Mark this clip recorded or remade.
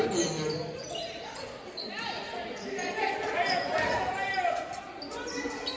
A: recorded